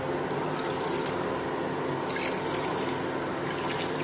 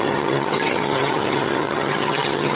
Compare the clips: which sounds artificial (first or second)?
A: second